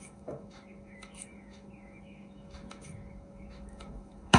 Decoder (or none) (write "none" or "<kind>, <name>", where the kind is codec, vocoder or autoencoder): autoencoder, DAC-VAE